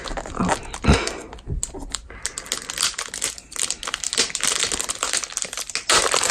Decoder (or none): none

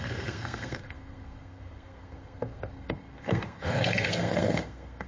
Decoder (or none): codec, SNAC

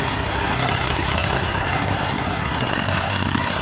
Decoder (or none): codec, SNAC